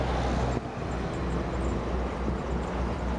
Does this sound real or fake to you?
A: real